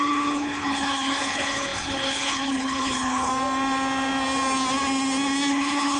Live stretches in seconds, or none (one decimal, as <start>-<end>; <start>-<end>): 3.3-5.5